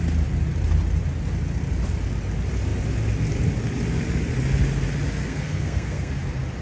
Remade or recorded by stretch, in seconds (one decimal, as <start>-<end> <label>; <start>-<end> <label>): 0.0-5.2 recorded; 5.2-6.1 remade; 6.1-6.6 recorded